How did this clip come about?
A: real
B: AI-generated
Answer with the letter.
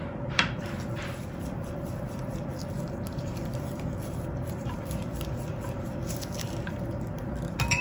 B